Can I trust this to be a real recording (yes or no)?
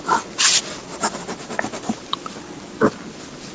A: yes